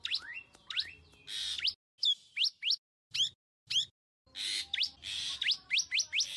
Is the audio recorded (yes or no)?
yes